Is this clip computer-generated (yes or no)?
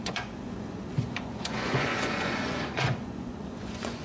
yes